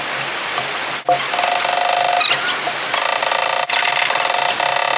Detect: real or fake real